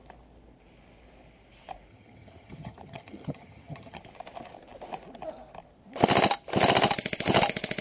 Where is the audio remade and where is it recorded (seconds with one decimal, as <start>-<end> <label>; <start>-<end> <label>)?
0.0-1.9 recorded; 1.9-4.0 remade; 4.0-7.8 recorded